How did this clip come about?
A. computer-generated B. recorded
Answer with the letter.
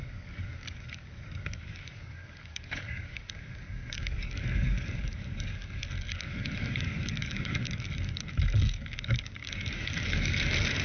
A